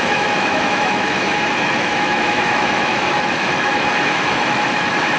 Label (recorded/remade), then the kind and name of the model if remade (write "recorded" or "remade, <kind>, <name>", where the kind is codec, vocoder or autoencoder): remade, autoencoder, DAC-VAE